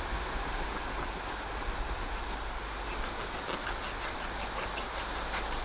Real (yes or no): yes